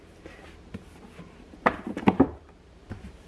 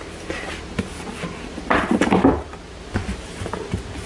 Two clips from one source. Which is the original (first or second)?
second